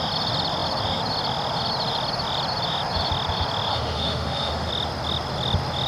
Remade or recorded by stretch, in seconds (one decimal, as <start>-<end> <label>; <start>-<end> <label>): 0.0-3.7 recorded; 3.7-4.7 remade; 4.7-5.9 recorded